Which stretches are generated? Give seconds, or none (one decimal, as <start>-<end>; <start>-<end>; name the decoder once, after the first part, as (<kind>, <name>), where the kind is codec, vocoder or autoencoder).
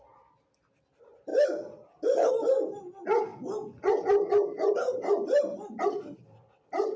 none